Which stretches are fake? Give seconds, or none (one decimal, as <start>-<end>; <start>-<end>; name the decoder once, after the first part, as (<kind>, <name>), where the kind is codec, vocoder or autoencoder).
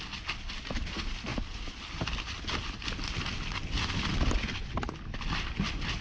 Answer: none